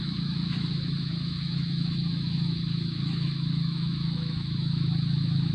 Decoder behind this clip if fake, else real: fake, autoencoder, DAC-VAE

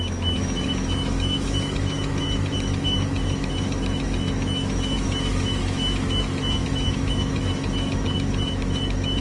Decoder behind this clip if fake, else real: fake, autoencoder, DAC-VAE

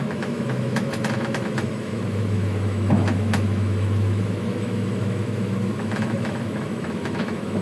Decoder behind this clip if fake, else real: fake, autoencoder, DAC-VAE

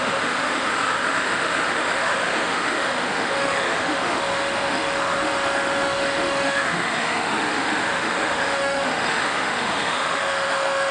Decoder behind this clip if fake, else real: fake, autoencoder, DAC-VAE